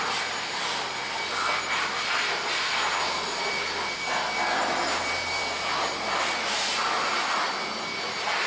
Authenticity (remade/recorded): recorded